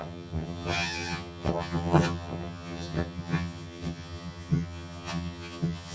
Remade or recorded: remade